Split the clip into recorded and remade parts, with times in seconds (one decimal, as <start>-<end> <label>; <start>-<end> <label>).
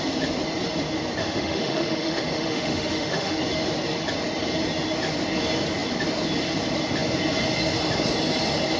0.0-1.2 recorded; 1.2-3.4 remade; 3.4-8.8 recorded